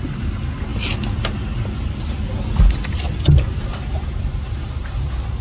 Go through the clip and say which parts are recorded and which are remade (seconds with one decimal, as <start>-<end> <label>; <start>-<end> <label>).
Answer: 0.0-0.7 remade; 0.7-3.3 recorded; 3.3-5.4 remade